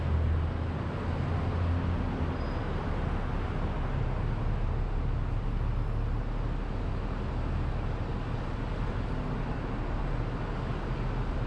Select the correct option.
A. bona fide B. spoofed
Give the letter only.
A